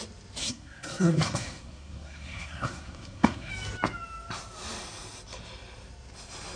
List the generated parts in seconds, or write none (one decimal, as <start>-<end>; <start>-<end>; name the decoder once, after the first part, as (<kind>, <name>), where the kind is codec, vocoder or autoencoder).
0.4-3.5 (codec, SNAC)